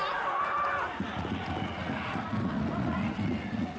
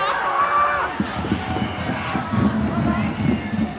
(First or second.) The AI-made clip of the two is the first